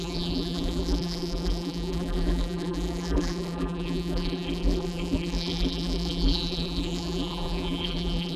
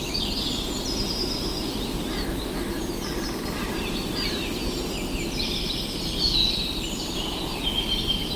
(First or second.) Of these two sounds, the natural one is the second